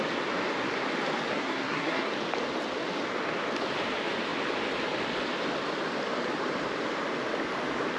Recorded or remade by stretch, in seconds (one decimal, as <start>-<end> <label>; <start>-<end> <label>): 0.0-1.3 recorded; 1.3-2.1 remade; 2.1-8.0 recorded

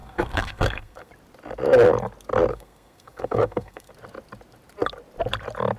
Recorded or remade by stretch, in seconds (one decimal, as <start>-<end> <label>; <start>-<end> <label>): 0.0-1.1 remade; 1.1-2.5 recorded; 2.5-3.9 remade; 3.9-5.8 recorded

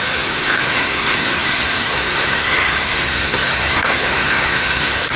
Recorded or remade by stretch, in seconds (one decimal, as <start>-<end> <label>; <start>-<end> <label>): 0.0-5.2 remade

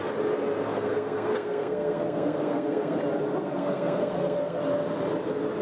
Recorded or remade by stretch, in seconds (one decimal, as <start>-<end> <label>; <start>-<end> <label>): 0.0-0.7 recorded; 0.7-3.0 remade; 3.0-3.4 recorded; 3.4-4.6 remade; 4.6-5.6 recorded

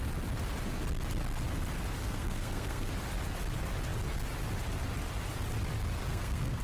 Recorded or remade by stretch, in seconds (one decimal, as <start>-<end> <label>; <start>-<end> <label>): 0.0-2.0 recorded; 2.0-2.9 remade; 2.9-6.1 recorded; 6.1-6.6 remade